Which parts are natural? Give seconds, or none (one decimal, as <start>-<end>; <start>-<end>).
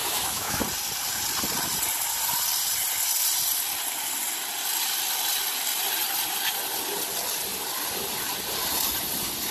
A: 0.6-9.5